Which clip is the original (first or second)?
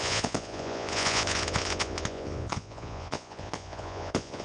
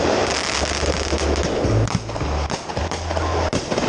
second